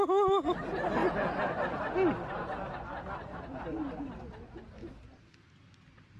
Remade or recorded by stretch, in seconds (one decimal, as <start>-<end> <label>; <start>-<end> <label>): 0.0-6.2 recorded